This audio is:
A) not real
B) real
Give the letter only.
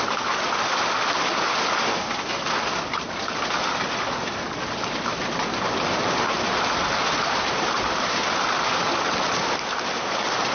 B